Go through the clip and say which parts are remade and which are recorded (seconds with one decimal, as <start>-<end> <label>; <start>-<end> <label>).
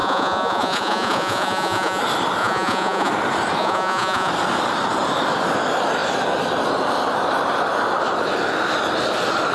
0.0-2.0 remade; 2.0-2.4 recorded; 2.4-3.1 remade; 3.1-3.6 recorded; 3.6-4.3 remade; 4.3-9.5 recorded